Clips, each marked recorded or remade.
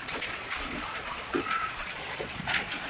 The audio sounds remade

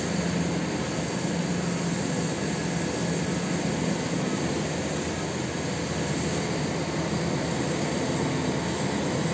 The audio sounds recorded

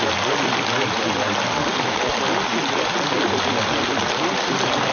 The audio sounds recorded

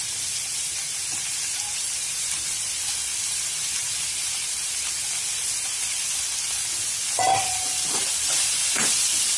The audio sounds recorded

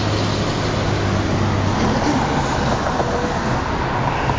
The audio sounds recorded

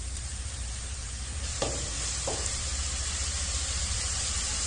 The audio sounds remade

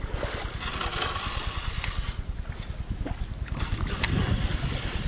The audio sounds recorded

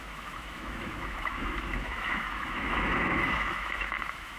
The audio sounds remade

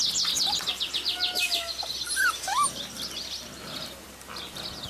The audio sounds recorded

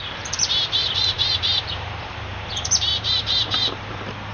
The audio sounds remade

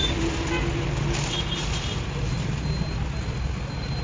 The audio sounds recorded